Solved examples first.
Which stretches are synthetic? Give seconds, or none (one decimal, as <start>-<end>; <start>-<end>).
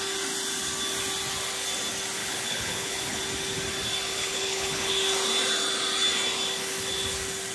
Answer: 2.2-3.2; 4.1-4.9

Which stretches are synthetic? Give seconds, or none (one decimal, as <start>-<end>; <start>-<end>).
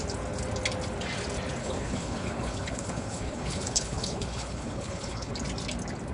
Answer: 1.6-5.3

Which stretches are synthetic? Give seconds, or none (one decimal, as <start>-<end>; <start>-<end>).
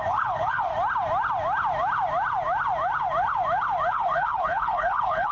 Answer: 0.0-0.7; 3.9-5.3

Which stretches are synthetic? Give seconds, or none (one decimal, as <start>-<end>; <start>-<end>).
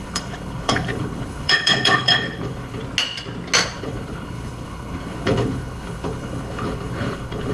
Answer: 0.0-2.8; 3.8-7.5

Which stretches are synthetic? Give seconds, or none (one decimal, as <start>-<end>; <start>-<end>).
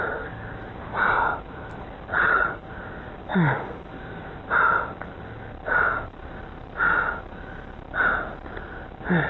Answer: 2.1-2.7